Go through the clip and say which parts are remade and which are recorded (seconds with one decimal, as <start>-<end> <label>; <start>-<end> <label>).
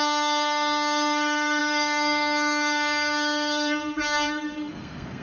0.0-5.2 remade